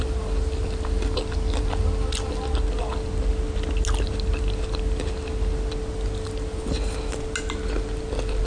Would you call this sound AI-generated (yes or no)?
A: no